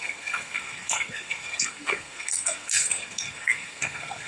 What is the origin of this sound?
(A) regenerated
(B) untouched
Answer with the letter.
A